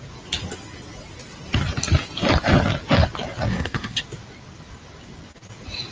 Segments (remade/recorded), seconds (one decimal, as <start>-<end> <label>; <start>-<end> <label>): 0.0-3.5 recorded; 3.5-4.0 remade; 4.0-5.9 recorded